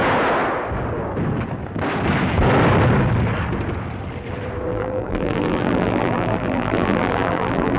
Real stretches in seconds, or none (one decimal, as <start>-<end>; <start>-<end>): 0.0-4.7